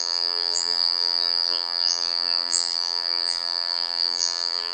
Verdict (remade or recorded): remade